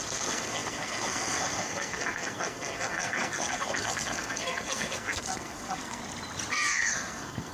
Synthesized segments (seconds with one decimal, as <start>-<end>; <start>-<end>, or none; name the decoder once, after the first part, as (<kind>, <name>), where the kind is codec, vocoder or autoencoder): 0.0-6.0 (codec, SNAC); 6.5-7.5